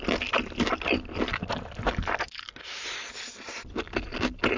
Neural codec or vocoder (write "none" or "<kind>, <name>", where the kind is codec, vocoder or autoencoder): none